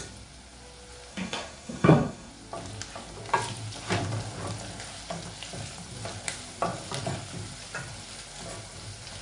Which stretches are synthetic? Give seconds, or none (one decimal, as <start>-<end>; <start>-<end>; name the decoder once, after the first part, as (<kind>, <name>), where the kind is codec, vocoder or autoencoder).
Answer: 1.1-2.3 (codec, SNAC)